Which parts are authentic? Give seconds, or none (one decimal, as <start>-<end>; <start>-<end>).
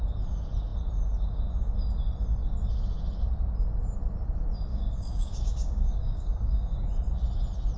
0.0-4.7; 6.9-7.8